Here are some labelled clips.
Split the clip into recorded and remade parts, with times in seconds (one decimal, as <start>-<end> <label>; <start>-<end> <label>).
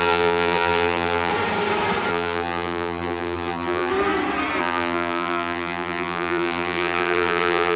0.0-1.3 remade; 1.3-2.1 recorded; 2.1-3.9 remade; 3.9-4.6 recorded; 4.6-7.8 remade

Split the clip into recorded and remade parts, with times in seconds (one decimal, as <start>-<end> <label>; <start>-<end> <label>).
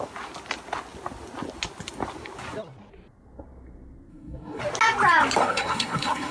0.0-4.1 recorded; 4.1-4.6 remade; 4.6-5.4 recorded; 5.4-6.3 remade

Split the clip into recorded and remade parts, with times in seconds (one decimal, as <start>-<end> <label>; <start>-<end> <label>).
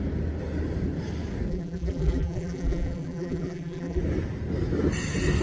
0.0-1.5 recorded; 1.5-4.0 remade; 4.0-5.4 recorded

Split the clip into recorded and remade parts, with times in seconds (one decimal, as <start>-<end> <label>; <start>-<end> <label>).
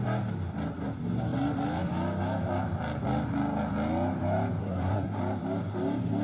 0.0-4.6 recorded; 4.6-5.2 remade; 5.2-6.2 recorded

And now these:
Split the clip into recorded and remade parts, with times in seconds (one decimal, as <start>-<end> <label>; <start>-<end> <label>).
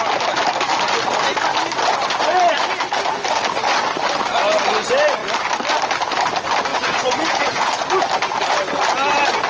0.0-6.7 recorded; 6.7-7.7 remade; 7.7-9.5 recorded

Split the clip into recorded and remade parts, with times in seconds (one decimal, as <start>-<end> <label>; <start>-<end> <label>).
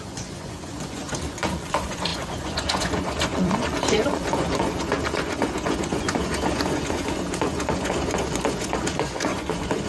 0.0-9.9 remade